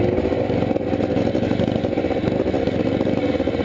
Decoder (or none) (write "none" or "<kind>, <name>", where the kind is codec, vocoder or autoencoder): none